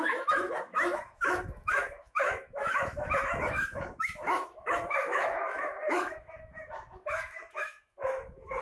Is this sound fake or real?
fake